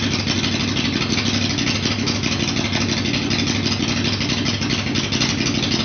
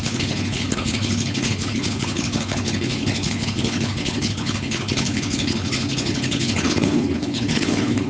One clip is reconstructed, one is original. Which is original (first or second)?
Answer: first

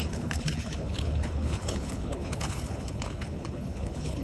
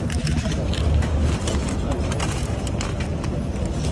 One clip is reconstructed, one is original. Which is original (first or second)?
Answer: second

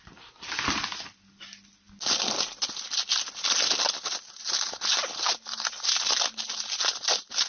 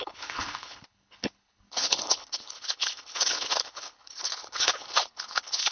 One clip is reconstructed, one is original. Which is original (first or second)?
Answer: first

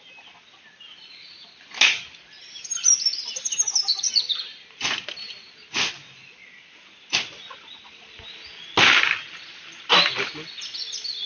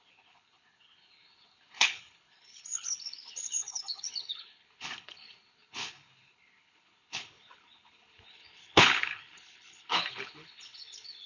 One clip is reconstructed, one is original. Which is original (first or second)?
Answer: first